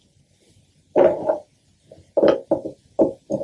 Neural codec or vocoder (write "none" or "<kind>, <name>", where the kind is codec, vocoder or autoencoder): none